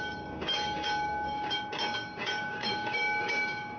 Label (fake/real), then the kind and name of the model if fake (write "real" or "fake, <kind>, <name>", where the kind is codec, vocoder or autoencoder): fake, codec, DAC